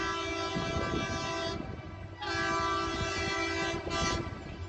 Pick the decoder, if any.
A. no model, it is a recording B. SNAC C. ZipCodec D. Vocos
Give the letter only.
A